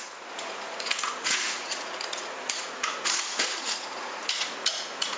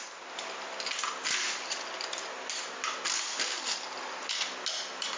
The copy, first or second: first